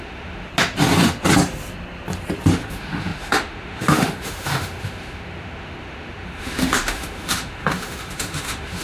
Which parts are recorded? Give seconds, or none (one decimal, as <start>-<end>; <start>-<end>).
0.5-2.5